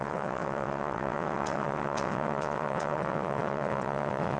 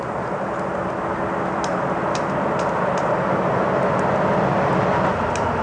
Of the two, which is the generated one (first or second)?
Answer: first